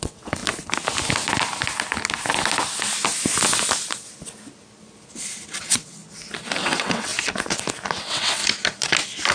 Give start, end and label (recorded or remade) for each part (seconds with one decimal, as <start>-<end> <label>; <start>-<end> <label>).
0.0-0.4 remade; 0.4-5.6 recorded; 5.6-6.0 remade; 6.0-6.6 recorded; 6.6-7.1 remade; 7.1-7.9 recorded; 7.9-8.4 remade; 8.4-9.3 recorded